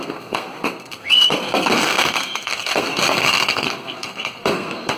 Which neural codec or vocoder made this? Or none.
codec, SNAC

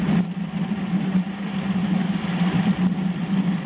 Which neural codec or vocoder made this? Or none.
none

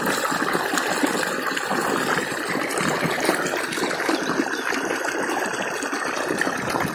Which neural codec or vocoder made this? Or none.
vocoder, BigVGAN v2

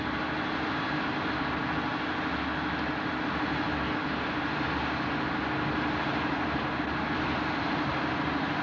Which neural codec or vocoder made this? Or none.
none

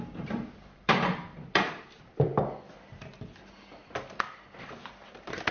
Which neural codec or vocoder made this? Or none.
vocoder, BigVGAN v2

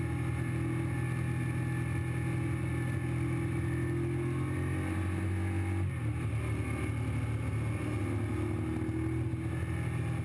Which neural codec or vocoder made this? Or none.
none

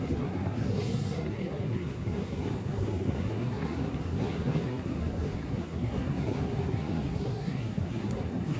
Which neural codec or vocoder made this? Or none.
codec, SNAC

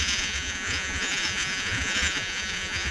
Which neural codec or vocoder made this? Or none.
vocoder, Vocos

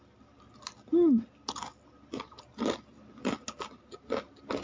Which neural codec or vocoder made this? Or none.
none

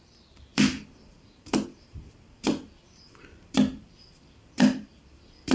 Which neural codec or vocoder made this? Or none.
vocoder, BigVGAN v2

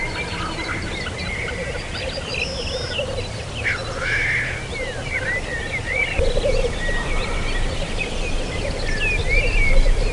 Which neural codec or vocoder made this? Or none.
none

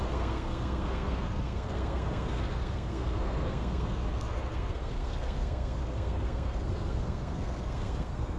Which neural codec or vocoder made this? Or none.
codec, SNAC